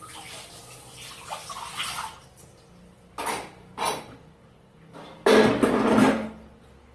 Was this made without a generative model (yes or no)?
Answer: yes